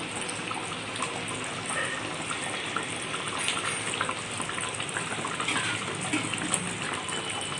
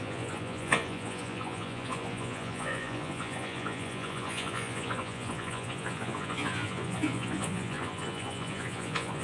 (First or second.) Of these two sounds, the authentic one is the first